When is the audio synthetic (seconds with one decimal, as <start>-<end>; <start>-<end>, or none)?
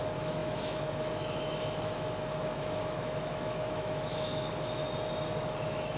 0.0-4.8; 5.4-6.0